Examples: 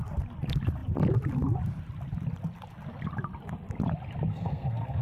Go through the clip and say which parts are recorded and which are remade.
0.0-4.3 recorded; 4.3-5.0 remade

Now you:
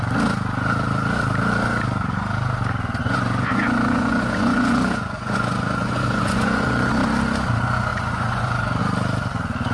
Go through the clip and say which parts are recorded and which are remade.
0.0-3.0 recorded; 3.0-6.9 remade; 6.9-7.9 recorded; 7.9-8.8 remade; 8.8-9.7 recorded

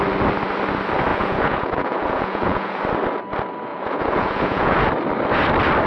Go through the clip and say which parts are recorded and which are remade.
0.0-1.1 recorded; 1.1-2.8 remade; 2.8-3.7 recorded; 3.7-4.9 remade; 4.9-5.9 recorded

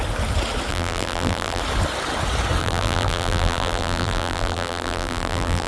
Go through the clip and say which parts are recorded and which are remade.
0.0-0.7 recorded; 0.7-1.6 remade; 1.6-2.6 recorded; 2.6-5.7 remade

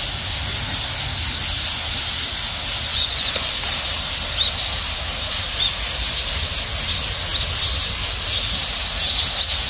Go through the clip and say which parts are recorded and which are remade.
0.0-2.9 recorded; 2.9-3.5 remade; 3.5-9.7 recorded

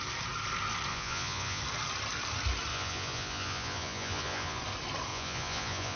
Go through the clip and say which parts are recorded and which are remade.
0.0-0.9 recorded; 0.9-1.6 remade; 1.6-2.7 recorded; 2.7-4.6 remade; 4.6-5.1 recorded; 5.1-6.0 remade

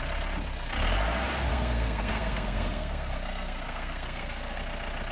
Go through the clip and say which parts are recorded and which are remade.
0.0-1.5 recorded; 1.5-4.6 remade; 4.6-5.1 recorded

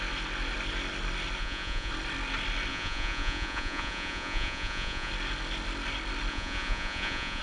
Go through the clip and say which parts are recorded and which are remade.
0.0-1.4 recorded; 1.4-1.9 remade; 1.9-2.7 recorded; 2.7-5.1 remade; 5.1-6.3 recorded; 6.3-7.4 remade